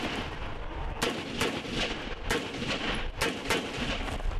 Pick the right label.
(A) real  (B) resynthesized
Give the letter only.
A